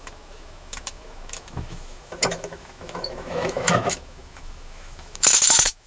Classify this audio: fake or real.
fake